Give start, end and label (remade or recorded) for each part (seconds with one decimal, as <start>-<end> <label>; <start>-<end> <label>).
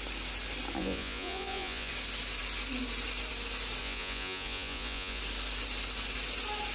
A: 0.0-0.8 recorded; 0.8-1.9 remade; 1.9-3.8 recorded; 3.8-5.2 remade; 5.2-6.7 recorded